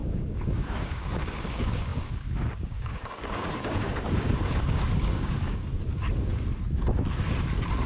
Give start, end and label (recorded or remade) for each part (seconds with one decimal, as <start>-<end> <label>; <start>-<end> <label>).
0.0-5.7 remade; 5.7-7.9 recorded